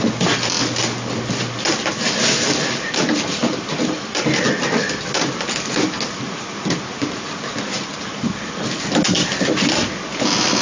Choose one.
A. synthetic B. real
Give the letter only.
B